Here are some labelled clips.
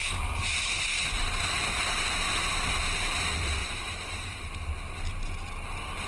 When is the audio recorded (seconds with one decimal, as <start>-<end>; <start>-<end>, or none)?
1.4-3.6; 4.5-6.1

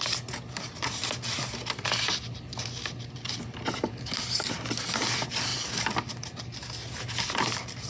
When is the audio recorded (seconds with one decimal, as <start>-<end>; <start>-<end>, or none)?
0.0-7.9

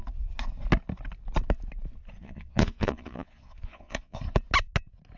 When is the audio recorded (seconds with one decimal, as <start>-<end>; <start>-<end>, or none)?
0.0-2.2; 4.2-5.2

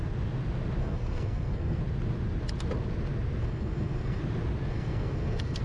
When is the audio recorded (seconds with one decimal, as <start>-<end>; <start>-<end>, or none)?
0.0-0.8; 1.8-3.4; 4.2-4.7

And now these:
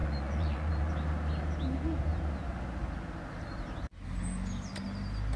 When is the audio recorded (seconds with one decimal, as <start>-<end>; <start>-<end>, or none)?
0.9-5.4

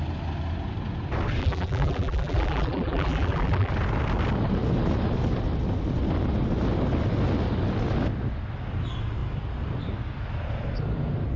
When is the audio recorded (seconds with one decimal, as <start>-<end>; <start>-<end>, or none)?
0.0-1.4; 3.7-11.4

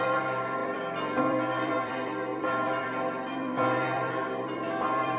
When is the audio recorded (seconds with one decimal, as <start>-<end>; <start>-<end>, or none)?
none

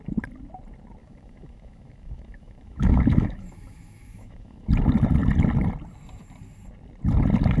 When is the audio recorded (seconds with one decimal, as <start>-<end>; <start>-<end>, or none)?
0.0-1.0; 4.7-7.6